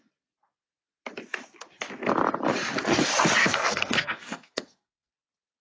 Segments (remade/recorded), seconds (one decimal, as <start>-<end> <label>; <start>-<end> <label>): 0.0-3.4 recorded; 3.4-5.1 remade; 5.1-5.6 recorded